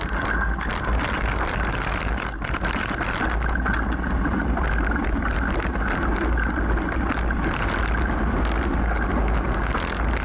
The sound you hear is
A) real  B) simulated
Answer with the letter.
A